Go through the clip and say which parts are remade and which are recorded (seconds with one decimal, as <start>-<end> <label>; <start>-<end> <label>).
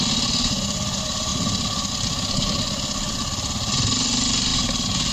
0.0-5.1 recorded